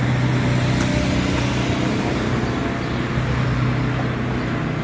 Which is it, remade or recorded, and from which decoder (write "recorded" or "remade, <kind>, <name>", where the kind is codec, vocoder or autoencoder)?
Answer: recorded